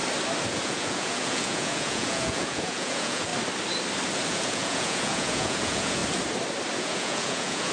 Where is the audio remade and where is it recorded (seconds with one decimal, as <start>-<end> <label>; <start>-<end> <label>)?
0.0-0.6 recorded; 0.6-3.3 remade; 3.3-4.3 recorded; 4.3-6.0 remade; 6.0-6.8 recorded; 6.8-7.7 remade